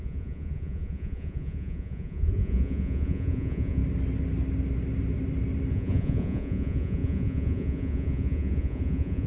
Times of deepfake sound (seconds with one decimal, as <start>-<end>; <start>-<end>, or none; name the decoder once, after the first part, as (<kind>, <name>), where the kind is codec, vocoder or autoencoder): 0.0-3.8 (vocoder, Vocos); 5.7-9.3